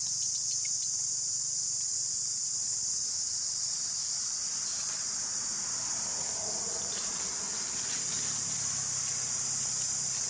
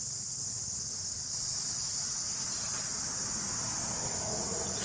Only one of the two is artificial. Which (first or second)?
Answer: first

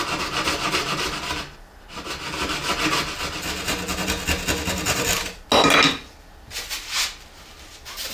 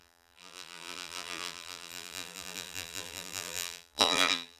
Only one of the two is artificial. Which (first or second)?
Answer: second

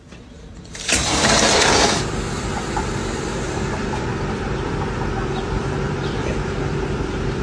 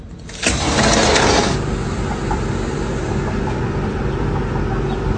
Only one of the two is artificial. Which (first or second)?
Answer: first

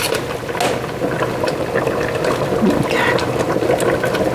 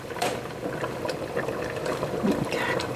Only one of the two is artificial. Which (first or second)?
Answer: second